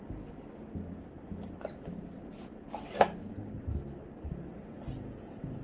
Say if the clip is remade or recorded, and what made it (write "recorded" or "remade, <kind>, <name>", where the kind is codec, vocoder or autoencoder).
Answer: recorded